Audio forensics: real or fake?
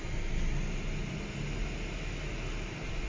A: real